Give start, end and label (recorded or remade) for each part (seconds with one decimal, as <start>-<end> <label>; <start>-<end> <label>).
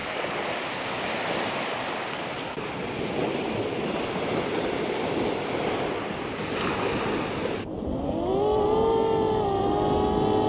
0.0-10.5 recorded